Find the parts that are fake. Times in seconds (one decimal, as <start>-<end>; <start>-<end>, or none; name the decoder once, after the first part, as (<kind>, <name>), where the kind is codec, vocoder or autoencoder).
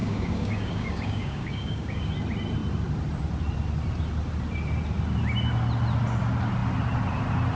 0.0-2.1 (codec, DAC)